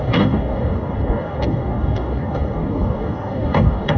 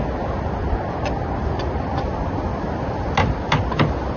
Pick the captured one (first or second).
second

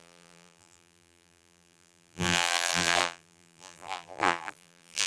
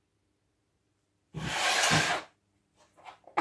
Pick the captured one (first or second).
second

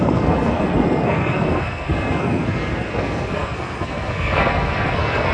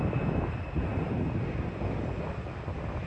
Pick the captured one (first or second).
second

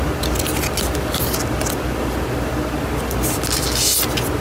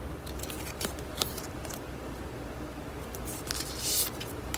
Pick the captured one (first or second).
first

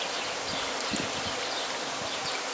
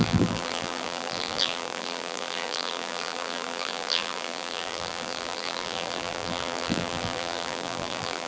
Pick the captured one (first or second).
first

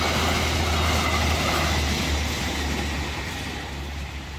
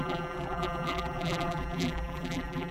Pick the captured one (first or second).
first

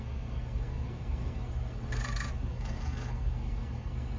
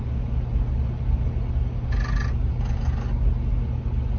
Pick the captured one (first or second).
second